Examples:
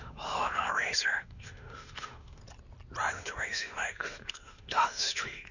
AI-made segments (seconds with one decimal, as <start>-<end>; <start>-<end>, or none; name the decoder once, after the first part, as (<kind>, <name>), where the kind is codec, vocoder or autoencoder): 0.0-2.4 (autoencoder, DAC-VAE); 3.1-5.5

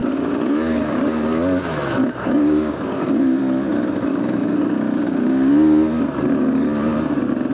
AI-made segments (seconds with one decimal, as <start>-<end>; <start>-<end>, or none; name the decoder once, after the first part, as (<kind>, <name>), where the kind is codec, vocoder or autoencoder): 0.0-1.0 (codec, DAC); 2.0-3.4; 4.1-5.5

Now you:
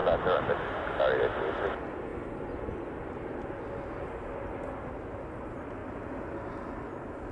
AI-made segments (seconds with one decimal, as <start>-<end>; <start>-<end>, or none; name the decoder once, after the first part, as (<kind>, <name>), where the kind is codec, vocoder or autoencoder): none

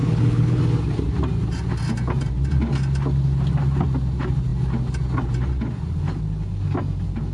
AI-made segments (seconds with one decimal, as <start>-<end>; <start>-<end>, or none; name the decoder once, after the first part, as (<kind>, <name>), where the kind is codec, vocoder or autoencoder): 0.0-0.6 (codec, HILCodec)

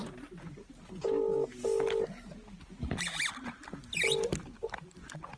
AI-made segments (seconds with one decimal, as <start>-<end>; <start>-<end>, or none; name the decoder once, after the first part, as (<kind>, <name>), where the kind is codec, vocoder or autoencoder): none

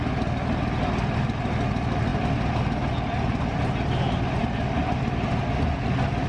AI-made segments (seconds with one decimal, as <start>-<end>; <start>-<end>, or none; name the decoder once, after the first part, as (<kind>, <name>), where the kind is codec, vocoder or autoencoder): none

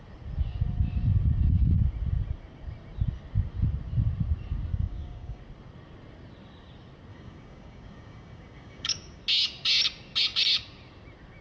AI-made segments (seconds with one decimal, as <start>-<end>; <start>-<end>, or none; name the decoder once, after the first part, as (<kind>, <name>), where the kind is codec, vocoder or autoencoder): 4.7-5.4 (codec, DAC); 7.1-9.2

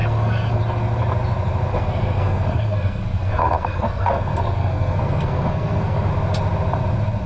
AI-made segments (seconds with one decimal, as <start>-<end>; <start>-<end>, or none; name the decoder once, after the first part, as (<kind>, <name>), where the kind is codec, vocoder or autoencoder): 0.0-0.6 (codec, SNAC); 1.7-6.1